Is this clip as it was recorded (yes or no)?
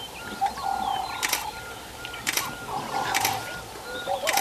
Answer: yes